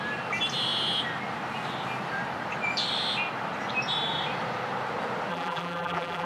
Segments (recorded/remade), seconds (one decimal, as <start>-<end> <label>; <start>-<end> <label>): 0.0-5.3 recorded; 5.3-6.3 remade

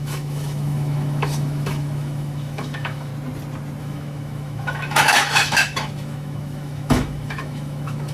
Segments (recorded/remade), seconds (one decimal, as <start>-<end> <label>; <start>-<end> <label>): 0.0-3.1 remade; 3.1-3.8 recorded; 3.8-8.1 remade

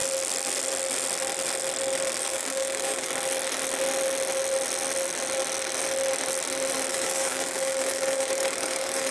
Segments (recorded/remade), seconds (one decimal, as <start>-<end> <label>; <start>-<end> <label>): 0.0-2.2 recorded; 2.2-3.1 remade; 3.1-6.9 recorded; 6.9-9.1 remade

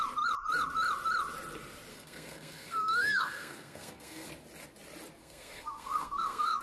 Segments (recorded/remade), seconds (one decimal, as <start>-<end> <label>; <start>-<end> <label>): 0.0-1.9 recorded; 1.9-4.3 remade; 4.3-5.2 recorded; 5.2-6.6 remade